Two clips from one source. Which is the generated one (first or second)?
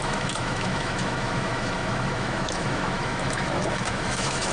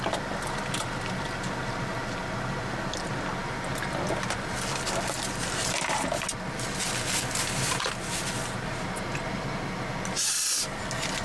first